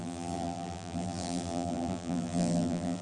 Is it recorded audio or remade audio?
remade